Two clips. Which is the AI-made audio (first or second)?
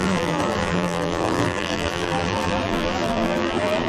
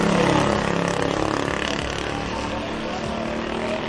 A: first